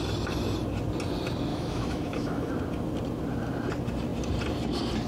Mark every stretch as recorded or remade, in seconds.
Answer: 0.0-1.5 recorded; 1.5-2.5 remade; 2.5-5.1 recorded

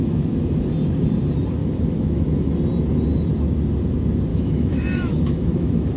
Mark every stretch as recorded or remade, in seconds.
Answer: 0.0-0.6 remade; 0.6-1.6 recorded; 1.6-2.5 remade; 2.5-4.3 recorded; 4.3-6.0 remade

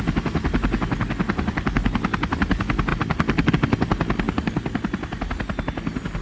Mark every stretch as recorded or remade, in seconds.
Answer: 0.0-6.2 recorded